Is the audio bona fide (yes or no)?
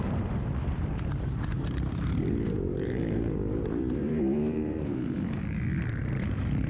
no